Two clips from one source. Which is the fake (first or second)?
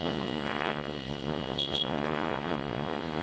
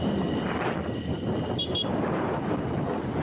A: first